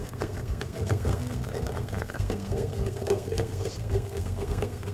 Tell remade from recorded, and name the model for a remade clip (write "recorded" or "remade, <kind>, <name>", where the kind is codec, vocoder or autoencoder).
remade, codec, SNAC